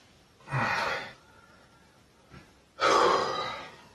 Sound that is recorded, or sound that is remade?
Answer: recorded